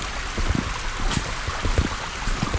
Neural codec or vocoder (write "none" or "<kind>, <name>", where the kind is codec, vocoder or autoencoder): none